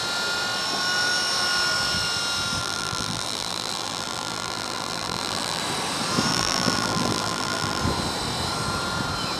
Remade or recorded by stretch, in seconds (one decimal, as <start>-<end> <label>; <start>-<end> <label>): 0.0-2.6 recorded; 2.6-5.6 remade; 5.6-6.3 recorded; 6.3-7.8 remade; 7.8-9.4 recorded